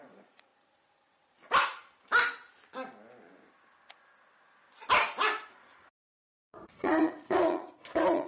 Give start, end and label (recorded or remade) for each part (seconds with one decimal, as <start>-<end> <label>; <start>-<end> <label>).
0.0-0.5 remade; 0.5-5.5 recorded; 5.5-8.3 remade